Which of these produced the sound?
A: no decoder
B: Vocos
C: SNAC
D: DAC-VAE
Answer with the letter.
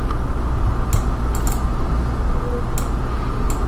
A